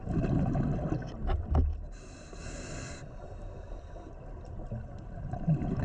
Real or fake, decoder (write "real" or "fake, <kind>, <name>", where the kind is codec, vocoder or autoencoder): real